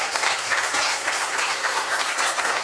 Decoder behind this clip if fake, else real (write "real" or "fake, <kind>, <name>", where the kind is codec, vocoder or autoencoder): fake, codec, SNAC